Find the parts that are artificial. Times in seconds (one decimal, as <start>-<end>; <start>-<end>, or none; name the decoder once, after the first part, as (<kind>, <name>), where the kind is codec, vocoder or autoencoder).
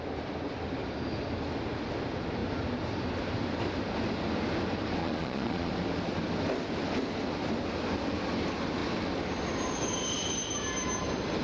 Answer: 5.0-5.7 (vocoder, Vocos)